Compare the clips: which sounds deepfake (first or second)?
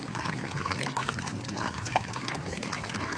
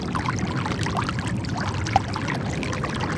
first